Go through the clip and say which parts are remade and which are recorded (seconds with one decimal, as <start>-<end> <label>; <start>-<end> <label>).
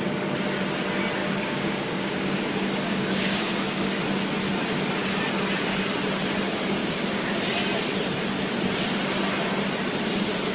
0.0-1.2 recorded; 1.2-3.9 remade; 3.9-6.8 recorded; 6.8-7.3 remade; 7.3-10.5 recorded